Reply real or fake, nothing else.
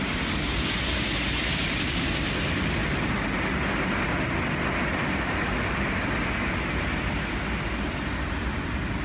real